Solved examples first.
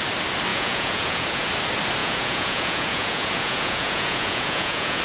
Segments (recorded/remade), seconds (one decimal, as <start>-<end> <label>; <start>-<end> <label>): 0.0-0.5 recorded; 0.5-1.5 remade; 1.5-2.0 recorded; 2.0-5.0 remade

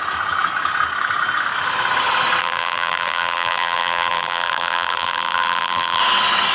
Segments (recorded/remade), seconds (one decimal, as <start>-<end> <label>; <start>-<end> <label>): 0.0-2.4 recorded; 2.4-6.0 remade; 6.0-6.5 recorded

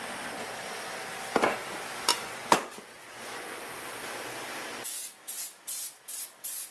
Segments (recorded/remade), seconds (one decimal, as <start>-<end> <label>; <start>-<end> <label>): 0.0-2.1 recorded; 2.1-3.6 remade; 3.6-6.7 recorded

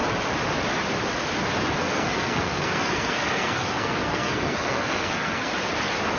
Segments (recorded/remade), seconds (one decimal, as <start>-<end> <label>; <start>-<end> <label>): 0.0-1.8 recorded; 1.8-5.5 remade; 5.5-6.2 recorded

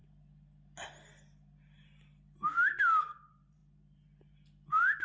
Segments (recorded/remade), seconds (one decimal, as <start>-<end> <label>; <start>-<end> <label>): 0.0-3.0 recorded; 3.0-3.6 remade; 3.6-5.0 recorded

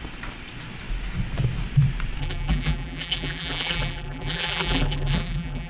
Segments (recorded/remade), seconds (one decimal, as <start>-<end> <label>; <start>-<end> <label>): 0.0-2.2 recorded; 2.2-5.7 remade

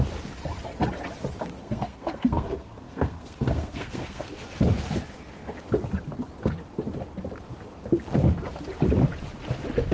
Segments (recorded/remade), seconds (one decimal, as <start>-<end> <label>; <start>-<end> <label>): 0.0-1.6 recorded; 1.6-4.4 remade; 4.4-9.9 recorded